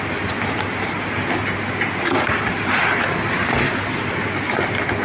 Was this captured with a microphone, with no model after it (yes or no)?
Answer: yes